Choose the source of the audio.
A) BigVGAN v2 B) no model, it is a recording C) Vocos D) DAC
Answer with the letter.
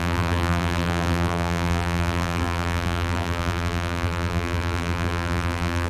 A